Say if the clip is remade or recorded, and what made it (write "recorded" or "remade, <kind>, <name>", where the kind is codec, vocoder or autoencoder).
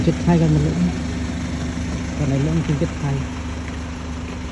recorded